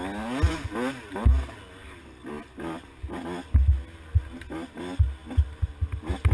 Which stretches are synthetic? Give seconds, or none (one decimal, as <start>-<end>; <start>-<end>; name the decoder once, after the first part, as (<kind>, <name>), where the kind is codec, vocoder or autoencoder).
none